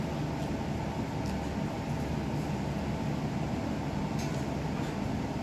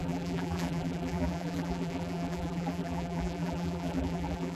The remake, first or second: second